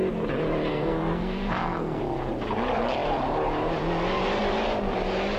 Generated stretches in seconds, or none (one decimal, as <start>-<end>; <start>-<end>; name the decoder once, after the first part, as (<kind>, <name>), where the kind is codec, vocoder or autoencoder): 0.7-2.0 (codec, SNAC)